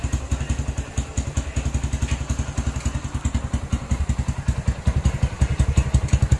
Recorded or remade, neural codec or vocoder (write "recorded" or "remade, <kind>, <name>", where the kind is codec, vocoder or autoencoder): recorded